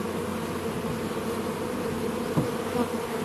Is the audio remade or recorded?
recorded